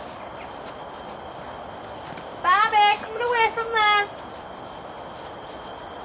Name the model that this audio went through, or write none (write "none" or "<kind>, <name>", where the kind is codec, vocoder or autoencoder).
none